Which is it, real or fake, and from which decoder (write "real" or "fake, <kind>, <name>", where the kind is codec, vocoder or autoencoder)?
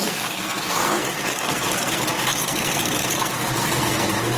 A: fake, codec, SNAC